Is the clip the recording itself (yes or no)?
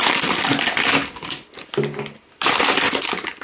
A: yes